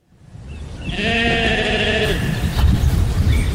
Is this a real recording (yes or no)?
yes